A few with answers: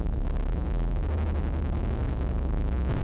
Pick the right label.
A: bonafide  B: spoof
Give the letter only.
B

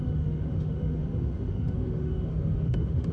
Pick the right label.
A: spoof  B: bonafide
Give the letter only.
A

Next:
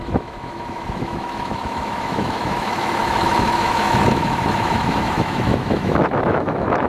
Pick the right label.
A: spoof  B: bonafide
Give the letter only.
A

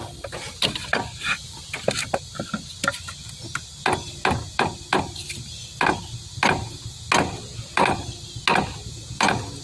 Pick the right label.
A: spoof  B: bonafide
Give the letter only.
B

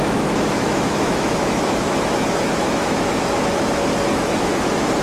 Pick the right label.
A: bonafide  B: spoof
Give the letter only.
B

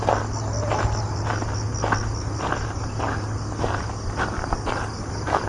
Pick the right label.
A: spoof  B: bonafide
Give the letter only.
B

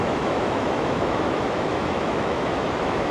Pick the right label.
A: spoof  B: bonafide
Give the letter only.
A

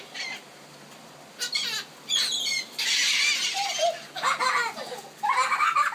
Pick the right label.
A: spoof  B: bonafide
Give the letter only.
B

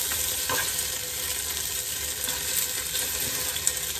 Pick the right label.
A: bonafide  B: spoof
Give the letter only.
A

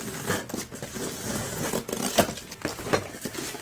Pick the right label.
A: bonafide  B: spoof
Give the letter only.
A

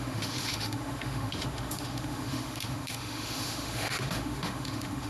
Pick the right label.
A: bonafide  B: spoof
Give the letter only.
B